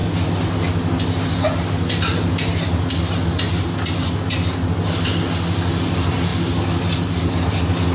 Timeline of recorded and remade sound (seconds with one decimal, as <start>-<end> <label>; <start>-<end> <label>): 0.0-7.9 recorded